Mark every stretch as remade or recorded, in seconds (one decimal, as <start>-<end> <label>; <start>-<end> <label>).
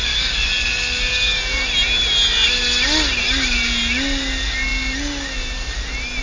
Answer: 0.0-0.5 remade; 0.5-6.2 recorded